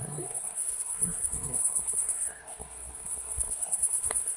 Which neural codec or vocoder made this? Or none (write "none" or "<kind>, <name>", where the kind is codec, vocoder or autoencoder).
codec, SNAC